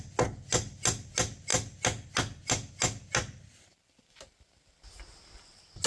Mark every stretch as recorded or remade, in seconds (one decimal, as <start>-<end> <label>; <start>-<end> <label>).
0.0-5.9 recorded